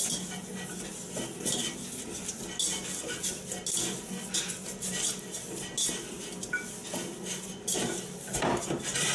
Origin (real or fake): real